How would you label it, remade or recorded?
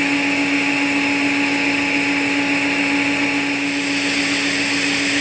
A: recorded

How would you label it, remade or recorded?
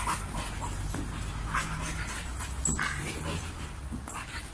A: recorded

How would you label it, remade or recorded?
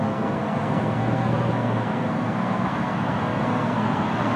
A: remade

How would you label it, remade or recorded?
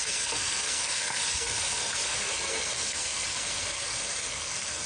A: remade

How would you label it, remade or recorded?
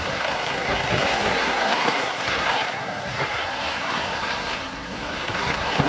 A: remade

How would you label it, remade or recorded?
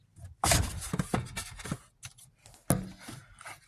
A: recorded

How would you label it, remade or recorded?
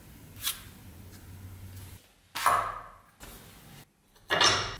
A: recorded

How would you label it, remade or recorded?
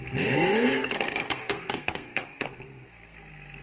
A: remade